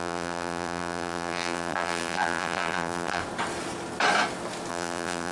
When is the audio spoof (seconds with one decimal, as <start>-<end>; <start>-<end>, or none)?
0.0-3.2; 4.7-5.3